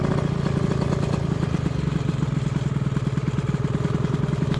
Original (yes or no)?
yes